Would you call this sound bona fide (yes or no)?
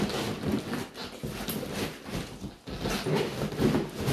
yes